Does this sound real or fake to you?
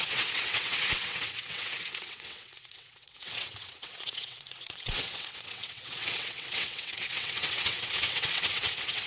fake